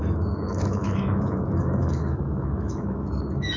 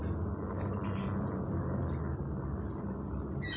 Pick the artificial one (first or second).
first